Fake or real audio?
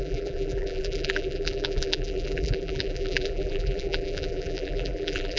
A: fake